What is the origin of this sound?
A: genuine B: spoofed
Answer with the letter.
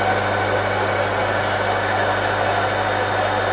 A